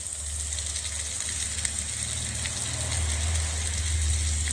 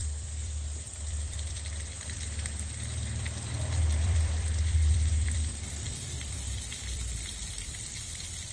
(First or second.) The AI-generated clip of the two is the second